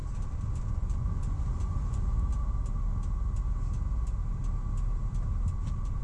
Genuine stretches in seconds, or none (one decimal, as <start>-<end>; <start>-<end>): 0.0-0.7; 2.3-6.0